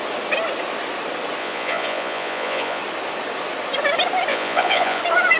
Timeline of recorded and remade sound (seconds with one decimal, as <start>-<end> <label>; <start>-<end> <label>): 0.0-1.4 recorded; 1.4-2.8 remade; 2.8-4.3 recorded; 4.3-5.0 remade; 5.0-5.4 recorded

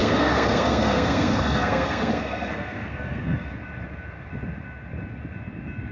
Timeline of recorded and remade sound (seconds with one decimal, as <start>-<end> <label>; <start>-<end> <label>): 0.0-3.5 remade; 3.5-5.9 recorded

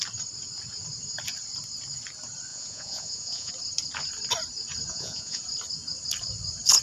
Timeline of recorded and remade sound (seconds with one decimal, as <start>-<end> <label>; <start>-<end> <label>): 0.0-2.5 recorded; 2.5-3.5 remade; 3.5-4.9 recorded; 4.9-5.4 remade; 5.4-6.8 recorded

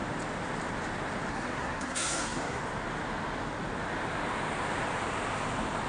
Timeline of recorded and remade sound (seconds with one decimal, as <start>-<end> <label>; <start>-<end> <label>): 0.0-1.3 recorded; 1.3-2.6 remade; 2.6-5.9 recorded

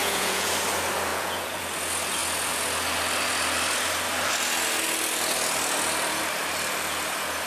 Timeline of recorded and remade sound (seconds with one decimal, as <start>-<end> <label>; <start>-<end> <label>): 0.0-0.5 remade; 0.5-1.1 recorded; 1.1-1.6 remade; 1.6-7.5 recorded

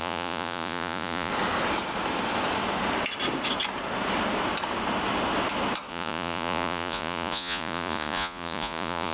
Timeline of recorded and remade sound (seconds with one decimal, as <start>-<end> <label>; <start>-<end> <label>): 0.0-1.3 remade; 1.3-5.9 recorded; 5.9-9.1 remade